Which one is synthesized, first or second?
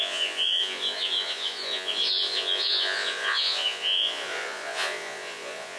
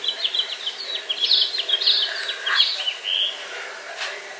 first